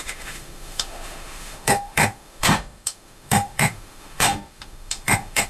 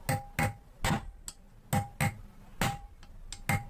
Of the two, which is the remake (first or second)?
first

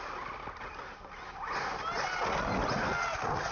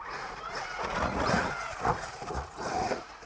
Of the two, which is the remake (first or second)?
second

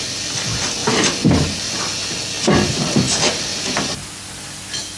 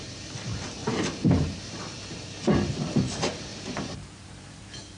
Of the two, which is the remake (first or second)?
second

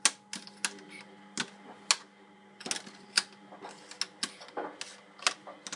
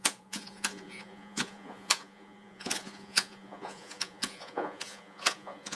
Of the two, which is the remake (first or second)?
second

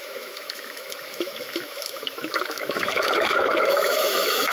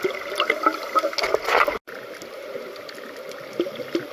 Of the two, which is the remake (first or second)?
first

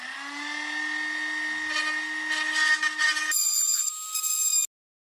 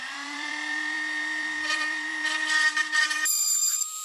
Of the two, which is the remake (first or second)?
second